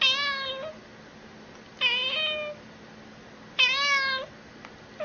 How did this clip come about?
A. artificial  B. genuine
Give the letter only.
B